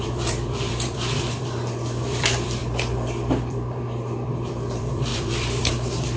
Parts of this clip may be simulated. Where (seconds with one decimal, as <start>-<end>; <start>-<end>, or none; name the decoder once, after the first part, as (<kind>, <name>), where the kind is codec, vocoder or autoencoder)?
0.0-2.6 (vocoder, BigVGAN v2); 3.3-6.2